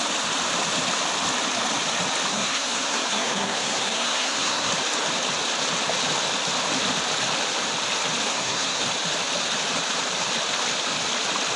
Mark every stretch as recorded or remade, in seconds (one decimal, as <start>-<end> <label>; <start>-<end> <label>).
0.0-2.3 recorded; 2.3-4.7 remade; 4.7-8.3 recorded; 8.3-8.8 remade; 8.8-11.6 recorded